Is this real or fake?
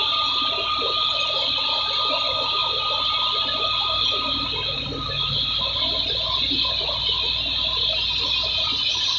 real